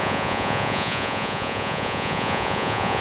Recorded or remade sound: remade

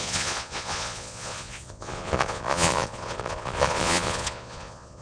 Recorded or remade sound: remade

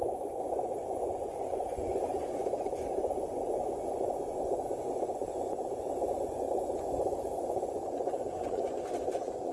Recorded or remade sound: remade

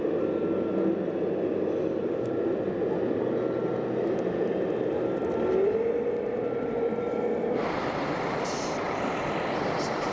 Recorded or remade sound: recorded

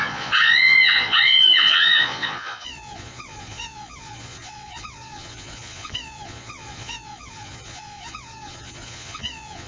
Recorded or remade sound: remade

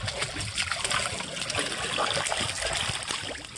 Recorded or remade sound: recorded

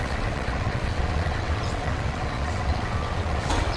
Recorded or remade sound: remade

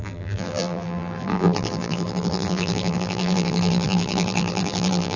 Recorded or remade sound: remade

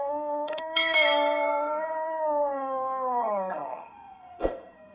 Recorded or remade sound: remade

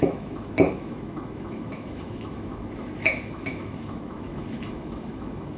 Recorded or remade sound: remade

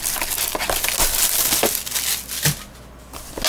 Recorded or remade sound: recorded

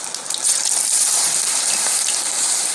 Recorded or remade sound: remade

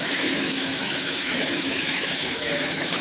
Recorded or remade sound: remade